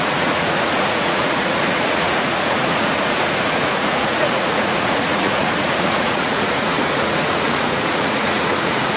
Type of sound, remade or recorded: remade